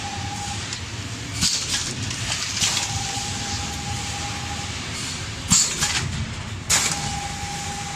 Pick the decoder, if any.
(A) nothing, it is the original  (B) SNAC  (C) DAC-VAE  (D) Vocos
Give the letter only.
A